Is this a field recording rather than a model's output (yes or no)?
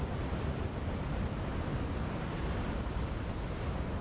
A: yes